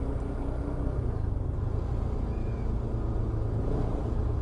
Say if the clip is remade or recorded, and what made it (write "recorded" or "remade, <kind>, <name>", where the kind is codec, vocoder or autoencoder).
recorded